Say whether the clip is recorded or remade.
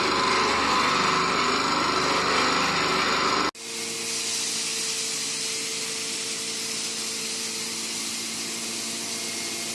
recorded